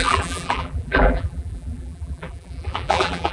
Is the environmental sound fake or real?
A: fake